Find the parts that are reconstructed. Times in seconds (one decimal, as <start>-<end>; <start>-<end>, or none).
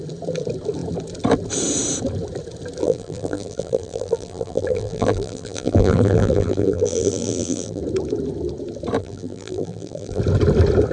2.8-7.8; 9.0-10.2